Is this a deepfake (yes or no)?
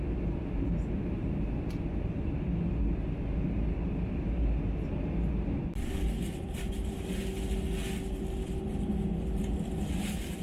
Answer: no